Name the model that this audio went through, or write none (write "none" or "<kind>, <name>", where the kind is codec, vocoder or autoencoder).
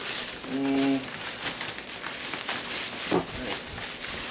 none